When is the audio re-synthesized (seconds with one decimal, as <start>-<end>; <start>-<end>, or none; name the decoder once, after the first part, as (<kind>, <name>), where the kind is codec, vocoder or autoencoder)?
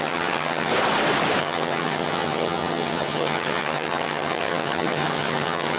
0.0-0.7 (vocoder, HiFi-GAN); 1.4-5.8